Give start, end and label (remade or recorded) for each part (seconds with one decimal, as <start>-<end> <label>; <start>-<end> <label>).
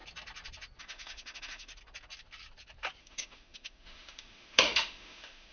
0.0-0.8 recorded; 0.8-1.7 remade; 1.7-3.0 recorded; 3.0-5.5 remade